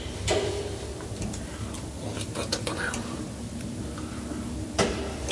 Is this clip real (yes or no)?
no